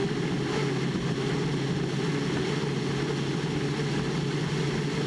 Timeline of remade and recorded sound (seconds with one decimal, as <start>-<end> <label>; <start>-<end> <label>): 0.0-5.1 recorded

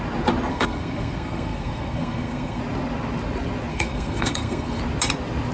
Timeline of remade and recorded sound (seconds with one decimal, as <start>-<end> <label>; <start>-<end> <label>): 0.0-0.5 recorded; 0.5-2.6 remade; 2.6-3.7 recorded; 3.7-4.8 remade; 4.8-5.5 recorded

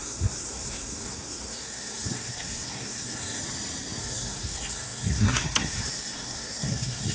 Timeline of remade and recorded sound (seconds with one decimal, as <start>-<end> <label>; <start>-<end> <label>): 0.0-3.4 remade; 3.4-4.0 recorded; 4.0-7.1 remade

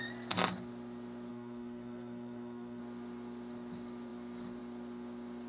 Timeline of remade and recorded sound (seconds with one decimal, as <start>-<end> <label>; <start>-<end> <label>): 0.0-1.3 recorded; 1.3-2.8 remade; 2.8-5.5 recorded

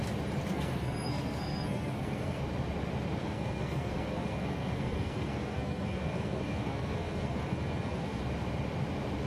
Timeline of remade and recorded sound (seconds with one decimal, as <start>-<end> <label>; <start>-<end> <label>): 0.0-0.5 recorded; 0.5-2.4 remade; 2.4-3.2 recorded; 3.2-8.2 remade; 8.2-9.3 recorded

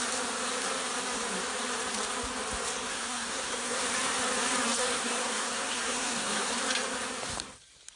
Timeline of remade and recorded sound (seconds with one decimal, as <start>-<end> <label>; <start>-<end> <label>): 0.0-2.9 recorded; 2.9-3.8 remade; 3.8-4.8 recorded; 4.8-6.5 remade; 6.5-8.0 recorded

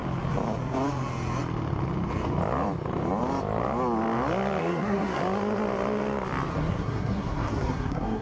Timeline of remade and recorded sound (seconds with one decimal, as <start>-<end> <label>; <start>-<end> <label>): 0.0-4.6 recorded; 4.6-5.2 remade; 5.2-6.5 recorded; 6.5-8.2 remade